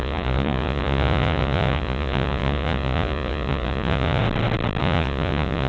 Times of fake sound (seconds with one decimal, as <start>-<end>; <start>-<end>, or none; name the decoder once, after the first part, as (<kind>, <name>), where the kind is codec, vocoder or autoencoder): 0.0-4.2 (vocoder, Vocos); 4.8-5.7